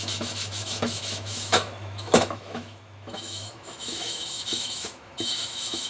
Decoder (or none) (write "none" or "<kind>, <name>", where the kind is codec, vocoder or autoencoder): autoencoder, DAC-VAE